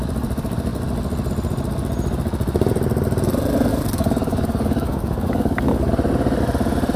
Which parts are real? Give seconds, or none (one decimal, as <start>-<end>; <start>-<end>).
0.0-3.7; 5.9-7.0